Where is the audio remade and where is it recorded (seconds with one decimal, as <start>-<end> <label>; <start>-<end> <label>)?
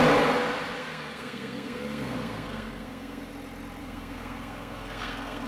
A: 0.0-0.8 recorded; 0.8-3.3 remade; 3.3-3.8 recorded; 3.8-5.5 remade